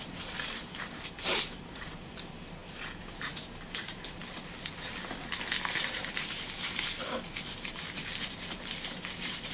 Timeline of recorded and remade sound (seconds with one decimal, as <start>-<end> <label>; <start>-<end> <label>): 0.0-4.2 remade; 4.2-5.7 recorded; 5.7-9.5 remade